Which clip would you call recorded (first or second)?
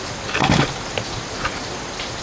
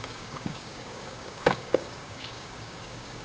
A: first